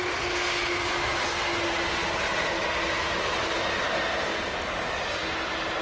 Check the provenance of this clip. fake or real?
real